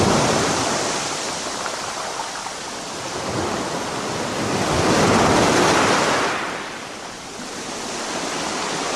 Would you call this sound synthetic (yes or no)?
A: no